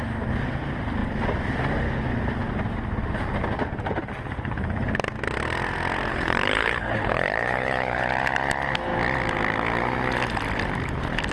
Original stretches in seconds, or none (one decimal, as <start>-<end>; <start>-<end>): 0.0-6.1; 8.0-11.3